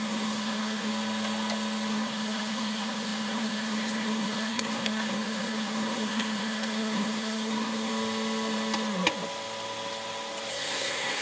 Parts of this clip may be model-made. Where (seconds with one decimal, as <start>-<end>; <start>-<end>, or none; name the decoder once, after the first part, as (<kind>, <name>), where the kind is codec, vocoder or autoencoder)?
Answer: 0.0-0.9 (codec, SNAC); 1.9-7.9; 10.5-11.2